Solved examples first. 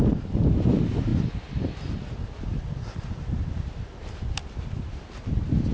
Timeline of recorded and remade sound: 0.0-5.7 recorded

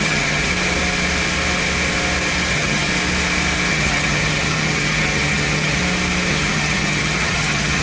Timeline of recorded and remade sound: 0.0-0.5 remade; 0.5-2.5 recorded; 2.5-2.9 remade; 2.9-3.7 recorded; 3.7-5.8 remade; 5.8-6.3 recorded; 6.3-7.8 remade

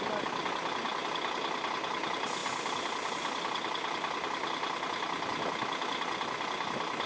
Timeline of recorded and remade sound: 0.0-7.1 recorded

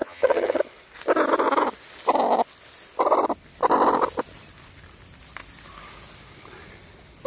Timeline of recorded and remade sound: 0.0-0.6 remade; 0.6-7.3 recorded

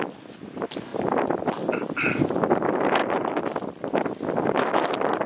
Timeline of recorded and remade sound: 0.0-5.3 recorded